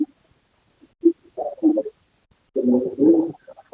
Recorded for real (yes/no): yes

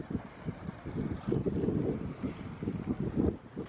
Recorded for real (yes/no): yes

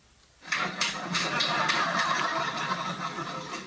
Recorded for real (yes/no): yes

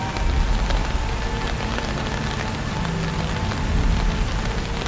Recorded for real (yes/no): yes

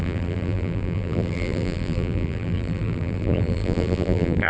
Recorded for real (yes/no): no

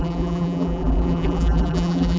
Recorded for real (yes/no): no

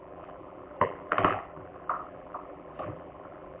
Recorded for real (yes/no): no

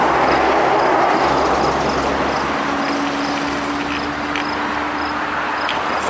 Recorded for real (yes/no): yes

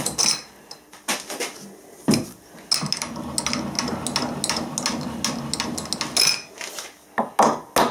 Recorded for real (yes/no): yes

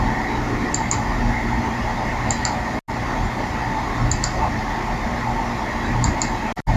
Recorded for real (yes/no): yes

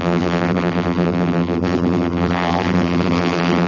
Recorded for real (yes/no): no